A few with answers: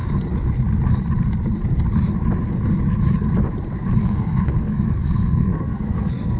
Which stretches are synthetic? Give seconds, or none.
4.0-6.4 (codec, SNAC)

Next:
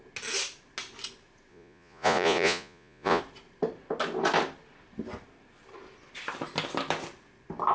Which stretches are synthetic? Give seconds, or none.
1.5-3.2 (vocoder, Vocos)

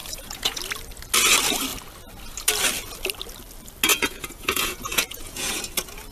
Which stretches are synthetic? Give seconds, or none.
0.0-0.6 (vocoder, Vocos); 3.9-5.6

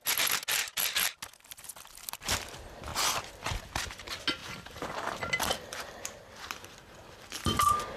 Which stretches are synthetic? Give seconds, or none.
none

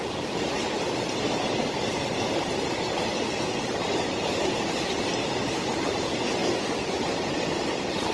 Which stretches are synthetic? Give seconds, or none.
0.0-6.4 (vocoder, BigVGAN v2); 7.2-8.1

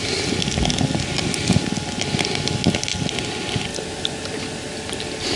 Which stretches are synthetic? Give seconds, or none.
none